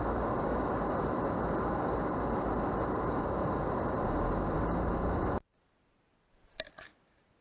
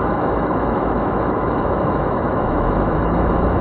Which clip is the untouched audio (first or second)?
first